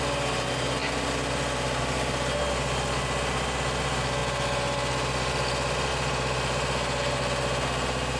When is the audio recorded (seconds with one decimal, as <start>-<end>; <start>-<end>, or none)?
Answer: 0.0-8.2